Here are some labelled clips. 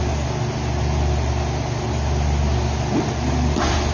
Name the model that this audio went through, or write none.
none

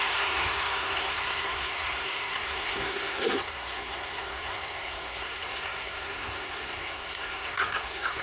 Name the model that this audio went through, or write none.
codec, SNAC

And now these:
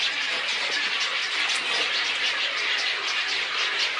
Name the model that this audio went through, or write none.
none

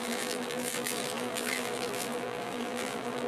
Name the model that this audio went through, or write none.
vocoder, BigVGAN v2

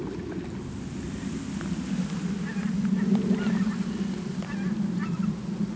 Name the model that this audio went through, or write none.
none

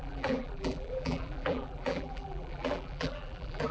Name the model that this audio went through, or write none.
vocoder, BigVGAN v2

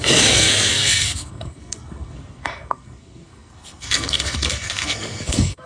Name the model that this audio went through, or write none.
codec, SNAC